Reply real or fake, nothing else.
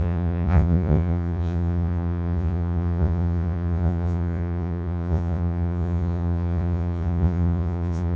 fake